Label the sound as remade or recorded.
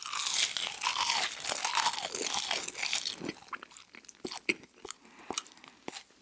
recorded